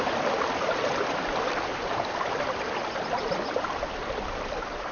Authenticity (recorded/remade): recorded